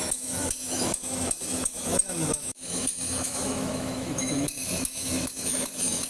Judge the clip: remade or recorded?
remade